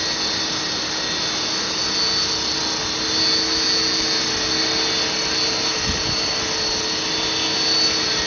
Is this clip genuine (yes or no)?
yes